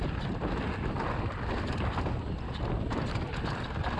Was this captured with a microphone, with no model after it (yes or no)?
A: yes